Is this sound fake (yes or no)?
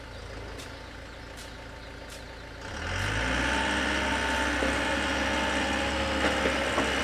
no